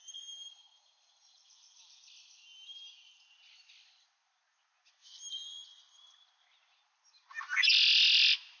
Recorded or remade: recorded